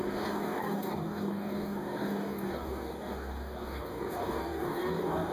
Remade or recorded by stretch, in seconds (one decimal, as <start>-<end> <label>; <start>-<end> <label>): 0.0-5.3 remade